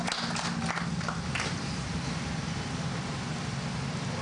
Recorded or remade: recorded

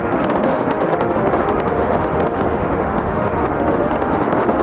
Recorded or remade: remade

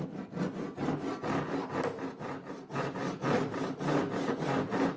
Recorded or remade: recorded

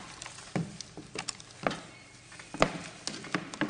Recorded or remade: recorded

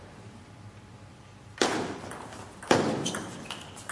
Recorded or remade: remade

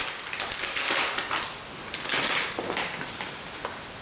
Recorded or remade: recorded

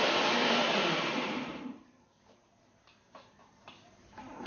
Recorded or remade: remade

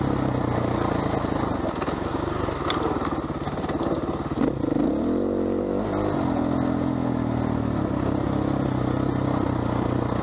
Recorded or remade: recorded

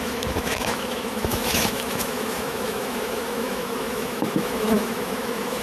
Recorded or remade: remade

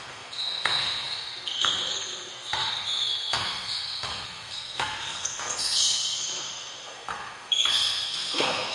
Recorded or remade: remade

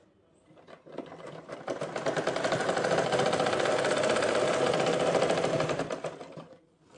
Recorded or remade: remade